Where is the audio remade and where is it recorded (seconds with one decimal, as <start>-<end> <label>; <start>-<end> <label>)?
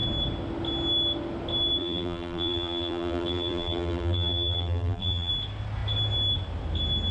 0.0-1.8 recorded; 1.8-5.3 remade; 5.3-7.1 recorded